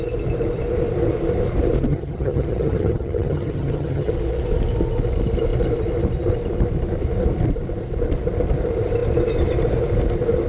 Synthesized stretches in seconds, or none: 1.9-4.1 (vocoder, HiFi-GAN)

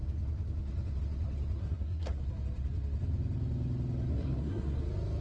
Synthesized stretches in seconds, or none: 1.6-2.2 (codec, SNAC); 4.1-4.8

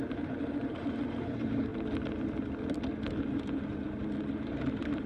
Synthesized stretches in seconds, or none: 0.0-1.7 (vocoder, BigVGAN v2); 4.4-5.1

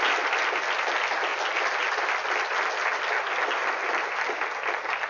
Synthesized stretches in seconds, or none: none

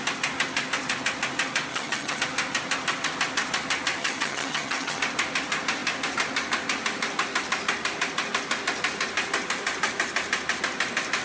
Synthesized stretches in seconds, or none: 1.7-2.2 (vocoder, HiFi-GAN); 4.0-5.0